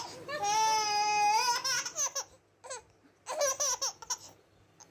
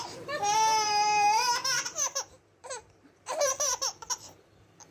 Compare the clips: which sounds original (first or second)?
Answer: first